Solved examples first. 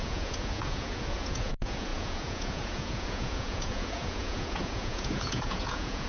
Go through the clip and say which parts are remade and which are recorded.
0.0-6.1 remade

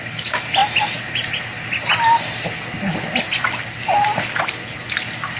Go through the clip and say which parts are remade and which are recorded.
0.0-5.4 recorded